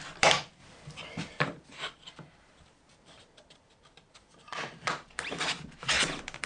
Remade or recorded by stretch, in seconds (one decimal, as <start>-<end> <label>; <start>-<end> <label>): 0.0-6.5 remade